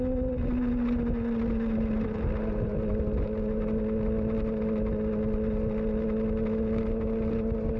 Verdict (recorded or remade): recorded